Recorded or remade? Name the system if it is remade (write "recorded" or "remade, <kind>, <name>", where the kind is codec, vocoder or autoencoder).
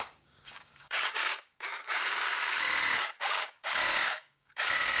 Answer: remade, codec, DAC